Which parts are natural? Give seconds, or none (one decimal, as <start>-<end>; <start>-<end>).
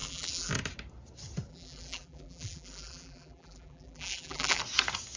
0.5-1.5; 4.6-5.2